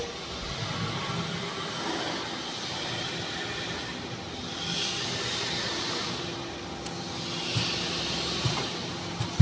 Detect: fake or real real